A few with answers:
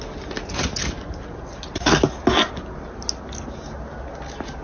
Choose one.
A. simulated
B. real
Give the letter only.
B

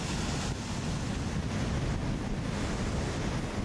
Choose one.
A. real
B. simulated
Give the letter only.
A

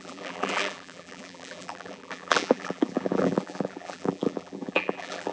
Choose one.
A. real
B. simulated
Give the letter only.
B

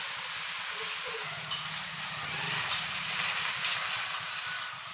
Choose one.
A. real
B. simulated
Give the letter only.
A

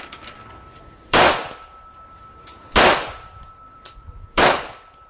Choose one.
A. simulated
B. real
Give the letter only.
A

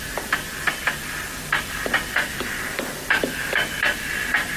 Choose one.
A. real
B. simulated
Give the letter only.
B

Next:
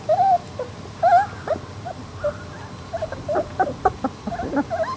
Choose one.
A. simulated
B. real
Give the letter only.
B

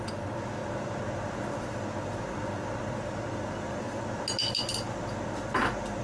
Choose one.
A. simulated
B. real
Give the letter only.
B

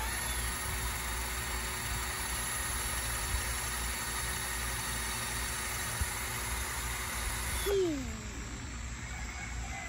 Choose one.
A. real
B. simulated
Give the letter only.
A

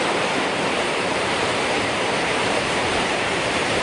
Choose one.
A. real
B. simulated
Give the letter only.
B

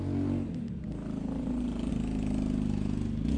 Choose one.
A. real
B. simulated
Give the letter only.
A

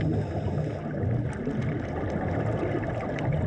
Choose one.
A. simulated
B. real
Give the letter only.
B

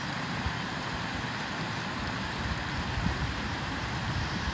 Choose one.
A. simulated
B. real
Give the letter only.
A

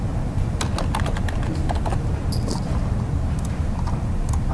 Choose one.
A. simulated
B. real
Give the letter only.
B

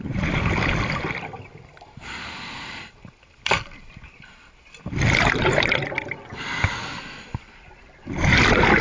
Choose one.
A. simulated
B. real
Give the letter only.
A